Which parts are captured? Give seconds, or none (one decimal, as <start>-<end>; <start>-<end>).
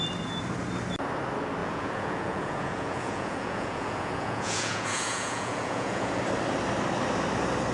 0.0-1.6; 6.2-7.7